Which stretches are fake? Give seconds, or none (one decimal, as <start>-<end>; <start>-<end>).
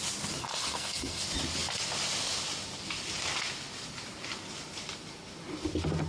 0.4-1.2